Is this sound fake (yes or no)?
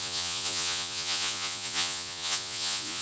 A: yes